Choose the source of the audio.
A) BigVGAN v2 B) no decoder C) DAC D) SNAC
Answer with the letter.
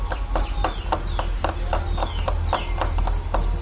B